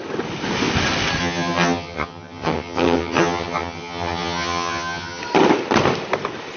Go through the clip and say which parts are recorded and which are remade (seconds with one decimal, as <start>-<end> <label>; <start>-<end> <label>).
0.0-1.2 recorded; 1.2-5.2 remade; 5.2-6.6 recorded